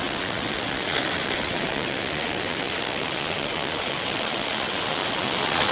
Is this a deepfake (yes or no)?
yes